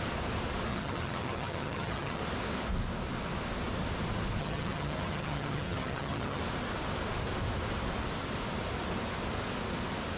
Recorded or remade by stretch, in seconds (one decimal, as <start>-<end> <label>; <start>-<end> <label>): 0.0-0.7 recorded; 0.7-2.2 remade; 2.2-4.4 recorded; 4.4-6.4 remade; 6.4-10.2 recorded